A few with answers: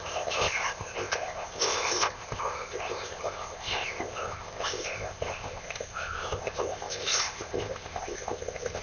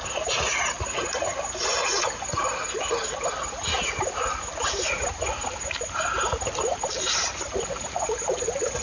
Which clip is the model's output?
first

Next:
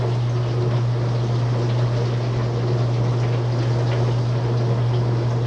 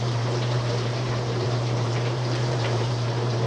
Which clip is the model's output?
second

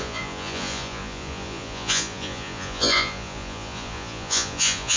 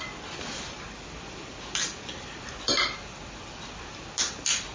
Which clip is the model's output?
first